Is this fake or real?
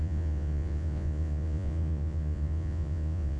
fake